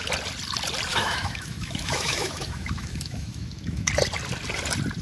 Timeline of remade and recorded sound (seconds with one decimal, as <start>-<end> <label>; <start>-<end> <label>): 0.0-0.9 recorded; 0.9-3.9 remade; 3.9-5.0 recorded